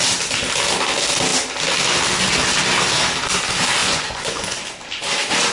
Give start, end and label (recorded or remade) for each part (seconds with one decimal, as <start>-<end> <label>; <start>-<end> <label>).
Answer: 0.0-3.8 recorded; 3.8-4.6 remade; 4.6-5.5 recorded